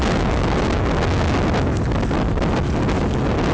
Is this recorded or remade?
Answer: recorded